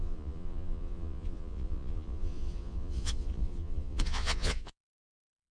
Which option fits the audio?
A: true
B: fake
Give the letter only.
B